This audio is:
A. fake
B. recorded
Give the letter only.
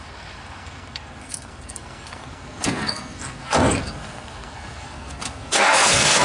A